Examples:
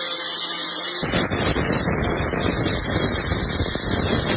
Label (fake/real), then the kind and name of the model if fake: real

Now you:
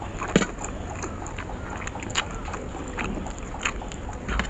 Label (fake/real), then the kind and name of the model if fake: real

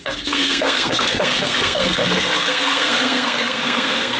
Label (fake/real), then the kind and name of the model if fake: fake, codec, SNAC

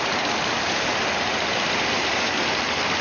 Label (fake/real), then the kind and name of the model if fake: real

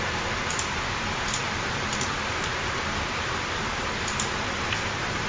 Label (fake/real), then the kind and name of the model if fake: fake, vocoder, BigVGAN v2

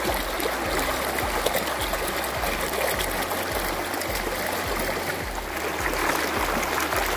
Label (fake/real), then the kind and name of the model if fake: real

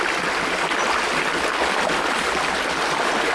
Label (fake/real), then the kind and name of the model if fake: real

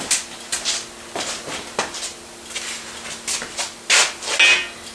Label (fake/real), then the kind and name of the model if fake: real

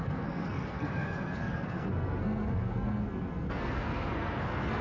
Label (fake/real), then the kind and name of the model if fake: fake, codec, SNAC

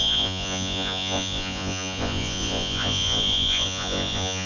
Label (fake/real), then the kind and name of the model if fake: fake, vocoder, Vocos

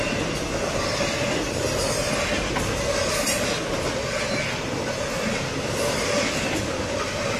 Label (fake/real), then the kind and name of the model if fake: real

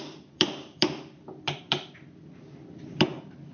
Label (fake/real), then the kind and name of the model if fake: fake, vocoder, BigVGAN v2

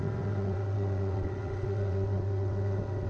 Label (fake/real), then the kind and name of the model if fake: fake, vocoder, WaveNeXt